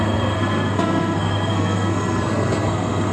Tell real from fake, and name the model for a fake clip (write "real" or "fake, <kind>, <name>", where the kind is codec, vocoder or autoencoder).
fake, codec, SNAC